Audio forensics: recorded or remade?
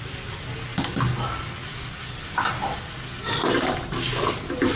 recorded